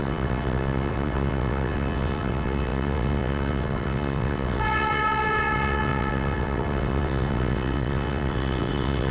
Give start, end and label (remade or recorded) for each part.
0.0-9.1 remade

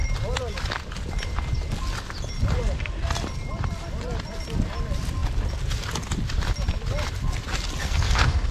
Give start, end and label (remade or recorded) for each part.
0.0-7.8 recorded; 7.8-8.5 remade